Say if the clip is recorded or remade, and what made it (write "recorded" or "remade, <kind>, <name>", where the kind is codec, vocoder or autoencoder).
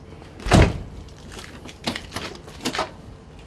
recorded